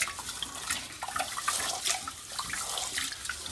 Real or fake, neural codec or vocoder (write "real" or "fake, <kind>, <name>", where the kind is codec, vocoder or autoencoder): real